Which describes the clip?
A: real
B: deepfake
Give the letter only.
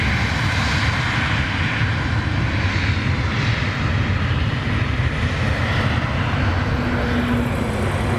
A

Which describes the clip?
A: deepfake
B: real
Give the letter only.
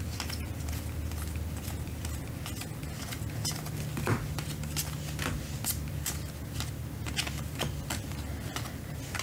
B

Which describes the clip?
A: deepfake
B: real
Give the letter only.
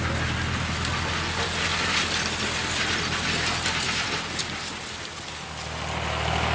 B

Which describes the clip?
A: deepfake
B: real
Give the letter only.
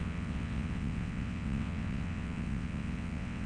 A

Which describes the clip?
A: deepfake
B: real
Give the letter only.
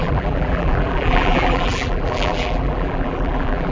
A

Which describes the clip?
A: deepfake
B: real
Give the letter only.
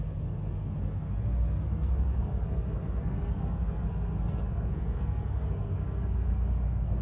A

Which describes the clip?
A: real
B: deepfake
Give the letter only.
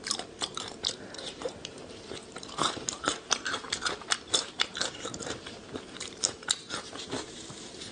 B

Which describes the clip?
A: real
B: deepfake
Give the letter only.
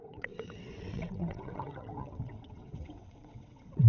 B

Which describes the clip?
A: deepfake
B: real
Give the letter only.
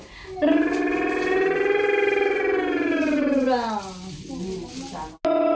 B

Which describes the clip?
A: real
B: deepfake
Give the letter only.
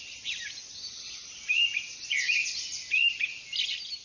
A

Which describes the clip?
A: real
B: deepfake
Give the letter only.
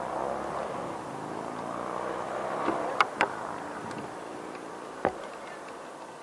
A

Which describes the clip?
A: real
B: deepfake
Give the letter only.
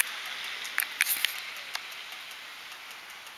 A